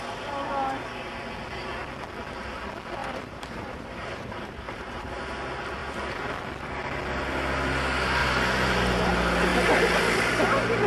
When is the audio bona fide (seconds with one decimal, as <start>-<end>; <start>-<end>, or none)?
0.0-3.0; 5.2-8.2; 9.1-10.9

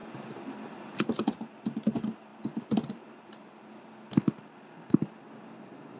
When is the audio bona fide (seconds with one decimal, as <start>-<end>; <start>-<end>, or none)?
1.0-2.3; 3.7-6.0

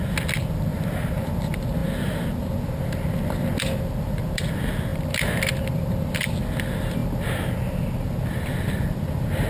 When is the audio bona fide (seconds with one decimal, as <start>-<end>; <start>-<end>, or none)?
0.0-9.5

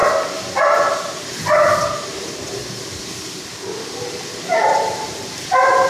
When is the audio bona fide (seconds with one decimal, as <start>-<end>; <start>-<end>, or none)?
0.0-0.9; 2.6-4.3

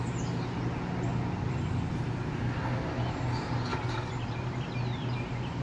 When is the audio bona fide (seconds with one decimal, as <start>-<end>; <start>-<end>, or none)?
0.0-1.1; 1.9-3.7; 4.7-5.6

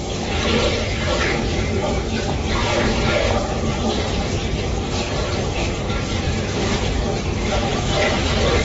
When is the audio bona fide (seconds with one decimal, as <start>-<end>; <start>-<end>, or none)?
0.0-2.6; 3.1-3.7; 6.3-8.6

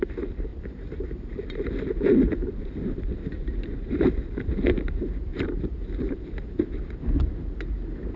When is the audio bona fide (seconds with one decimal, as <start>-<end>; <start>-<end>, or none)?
0.0-0.5; 3.0-5.3; 6.0-8.2

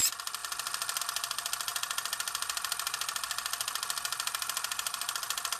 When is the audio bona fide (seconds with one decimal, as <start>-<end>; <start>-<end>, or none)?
0.0-5.6